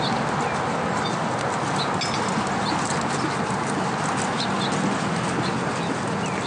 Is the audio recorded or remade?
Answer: recorded